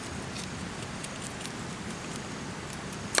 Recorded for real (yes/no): yes